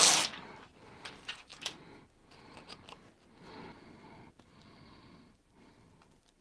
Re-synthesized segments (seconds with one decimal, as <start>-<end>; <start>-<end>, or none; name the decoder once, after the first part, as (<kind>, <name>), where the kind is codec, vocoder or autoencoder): 0.0-2.2 (vocoder, BigVGAN v2); 4.3-6.4